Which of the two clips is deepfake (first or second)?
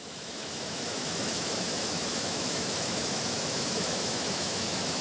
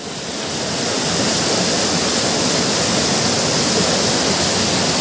first